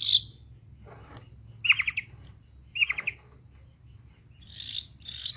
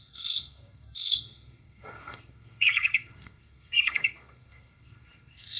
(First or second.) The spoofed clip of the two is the second